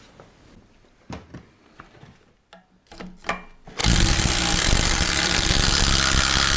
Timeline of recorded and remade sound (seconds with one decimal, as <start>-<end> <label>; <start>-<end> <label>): 0.0-3.8 recorded; 3.8-5.5 remade; 5.5-6.6 recorded